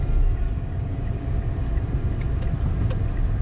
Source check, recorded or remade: recorded